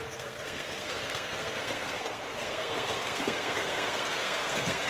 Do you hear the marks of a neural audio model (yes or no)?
yes